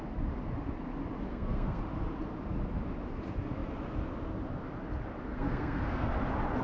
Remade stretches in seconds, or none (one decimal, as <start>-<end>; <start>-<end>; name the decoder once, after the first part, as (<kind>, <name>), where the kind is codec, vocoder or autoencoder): 1.3-1.8 (codec, SNAC); 5.3-6.1